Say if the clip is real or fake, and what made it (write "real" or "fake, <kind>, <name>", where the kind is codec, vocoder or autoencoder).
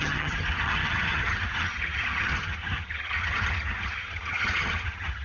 fake, vocoder, HiFi-GAN